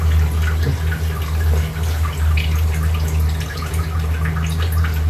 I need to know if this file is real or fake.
real